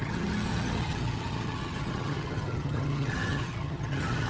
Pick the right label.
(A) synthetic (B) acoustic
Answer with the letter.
A